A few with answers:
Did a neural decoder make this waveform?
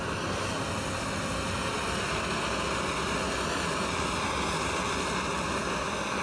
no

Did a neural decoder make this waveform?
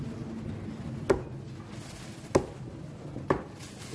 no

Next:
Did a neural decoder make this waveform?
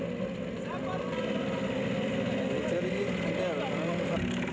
no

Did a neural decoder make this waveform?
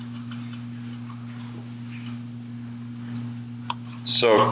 no